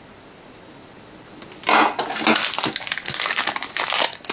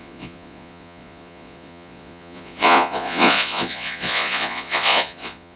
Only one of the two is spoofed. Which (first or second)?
second